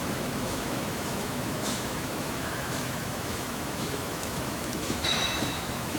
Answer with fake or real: fake